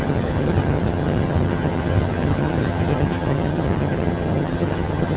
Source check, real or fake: fake